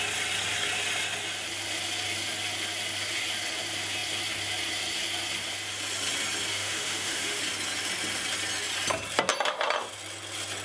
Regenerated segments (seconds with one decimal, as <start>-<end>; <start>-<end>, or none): 6.5-7.4

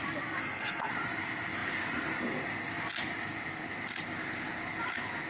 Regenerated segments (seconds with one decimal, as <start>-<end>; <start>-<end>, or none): 0.4-0.9

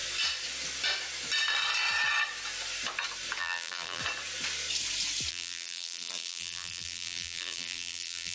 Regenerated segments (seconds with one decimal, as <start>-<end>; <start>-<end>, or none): 3.4-4.0; 5.3-8.3

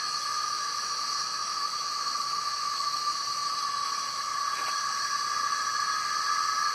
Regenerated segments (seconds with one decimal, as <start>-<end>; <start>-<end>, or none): 0.0-4.3